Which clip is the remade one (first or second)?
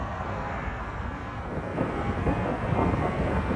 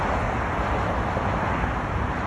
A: first